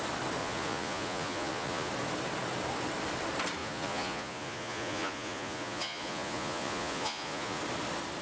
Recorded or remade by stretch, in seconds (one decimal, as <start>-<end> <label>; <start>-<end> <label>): 0.0-0.4 recorded; 0.4-1.9 remade; 1.9-3.6 recorded; 3.6-7.6 remade; 7.6-8.2 recorded